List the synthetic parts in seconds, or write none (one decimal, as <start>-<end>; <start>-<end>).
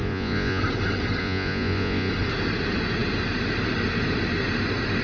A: 0.0-0.6; 1.2-2.1